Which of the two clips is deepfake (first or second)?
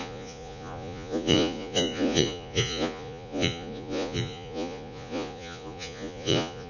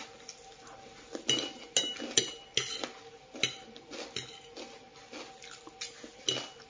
first